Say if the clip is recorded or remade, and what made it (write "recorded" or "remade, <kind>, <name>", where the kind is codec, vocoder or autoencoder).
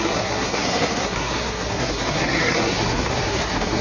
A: remade, codec, SNAC